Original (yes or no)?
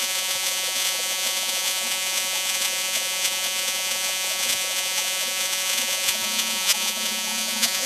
no